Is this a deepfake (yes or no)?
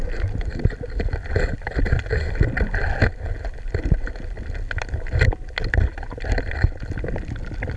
no